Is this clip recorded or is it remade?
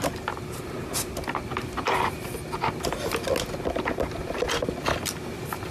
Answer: recorded